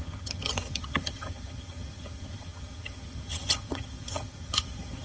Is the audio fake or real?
fake